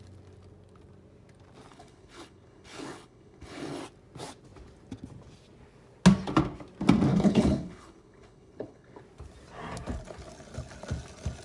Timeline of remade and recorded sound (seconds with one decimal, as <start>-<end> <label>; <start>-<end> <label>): 0.0-1.7 recorded; 1.7-3.8 remade; 3.8-7.1 recorded; 7.1-9.0 remade; 9.0-11.4 recorded